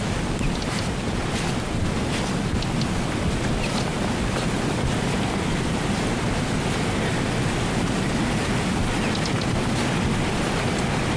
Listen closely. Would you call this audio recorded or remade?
recorded